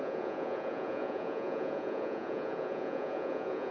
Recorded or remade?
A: remade